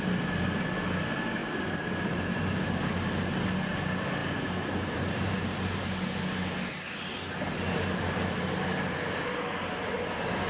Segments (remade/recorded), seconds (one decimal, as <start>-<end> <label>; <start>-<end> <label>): 0.0-1.4 recorded; 1.4-2.8 remade; 2.8-4.2 recorded; 4.2-5.4 remade; 5.4-10.5 recorded